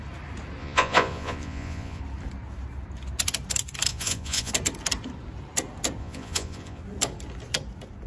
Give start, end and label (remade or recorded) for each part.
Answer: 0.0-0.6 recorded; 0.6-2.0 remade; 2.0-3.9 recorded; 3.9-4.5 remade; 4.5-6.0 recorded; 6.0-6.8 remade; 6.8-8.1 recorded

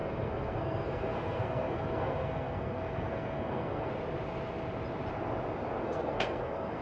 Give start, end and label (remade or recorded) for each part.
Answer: 0.0-3.9 remade; 3.9-5.8 recorded; 5.8-6.8 remade

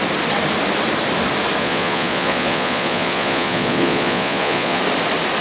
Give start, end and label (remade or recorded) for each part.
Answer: 0.0-1.6 recorded; 1.6-4.8 remade; 4.8-5.4 recorded

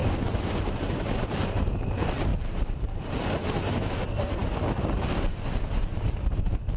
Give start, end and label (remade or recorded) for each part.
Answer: 0.0-1.7 remade; 1.7-2.3 recorded; 2.3-3.0 remade; 3.0-6.8 recorded

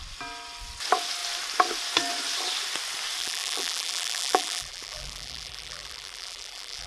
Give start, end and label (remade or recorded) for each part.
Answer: 0.0-3.2 recorded; 3.2-6.9 remade

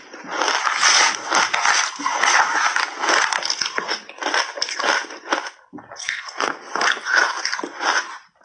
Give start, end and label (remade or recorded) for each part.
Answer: 0.0-6.0 recorded; 6.0-6.6 remade; 6.6-8.4 recorded